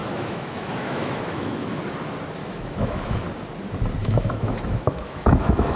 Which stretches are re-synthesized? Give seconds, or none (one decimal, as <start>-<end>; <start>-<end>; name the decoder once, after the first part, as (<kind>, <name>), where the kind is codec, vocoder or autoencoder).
0.0-1.8 (autoencoder, DAC-VAE); 2.4-3.2; 4.0-5.8